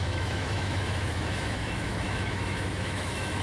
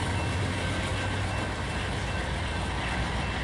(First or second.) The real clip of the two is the second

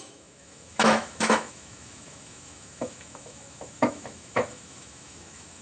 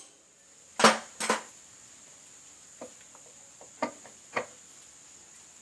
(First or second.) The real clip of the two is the second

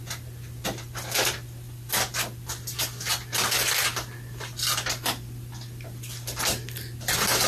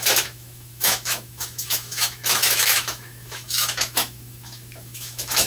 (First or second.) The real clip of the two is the first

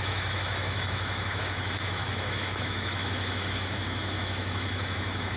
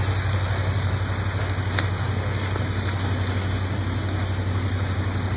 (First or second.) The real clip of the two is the second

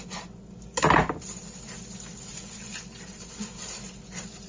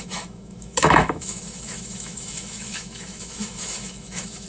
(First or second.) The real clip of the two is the first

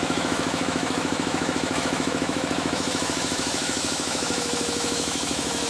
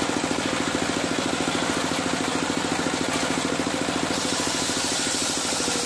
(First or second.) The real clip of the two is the second